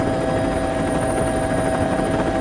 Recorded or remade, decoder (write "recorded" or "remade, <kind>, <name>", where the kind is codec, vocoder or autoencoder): recorded